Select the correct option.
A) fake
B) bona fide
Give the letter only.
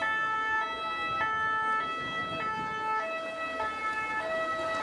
B